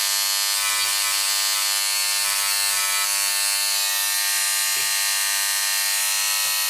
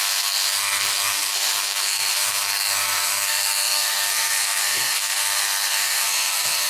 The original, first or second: first